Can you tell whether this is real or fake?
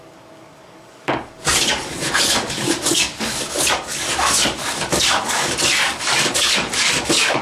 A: fake